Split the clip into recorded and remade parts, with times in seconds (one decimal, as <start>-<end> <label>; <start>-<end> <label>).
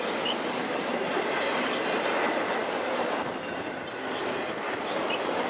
0.0-0.6 recorded; 0.6-1.8 remade; 1.8-5.5 recorded